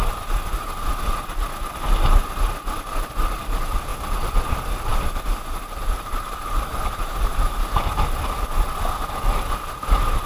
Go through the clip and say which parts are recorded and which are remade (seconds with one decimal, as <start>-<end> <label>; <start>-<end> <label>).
0.0-4.9 recorded; 4.9-7.9 remade; 7.9-10.3 recorded